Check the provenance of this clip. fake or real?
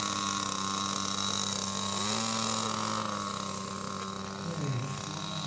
real